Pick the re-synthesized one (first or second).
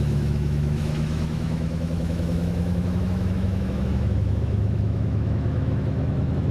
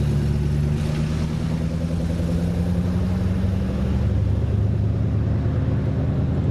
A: first